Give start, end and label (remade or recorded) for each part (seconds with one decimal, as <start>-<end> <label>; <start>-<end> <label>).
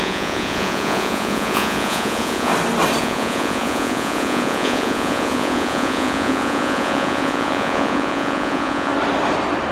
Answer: 0.0-2.5 remade; 2.5-3.0 recorded; 3.0-8.9 remade; 8.9-9.7 recorded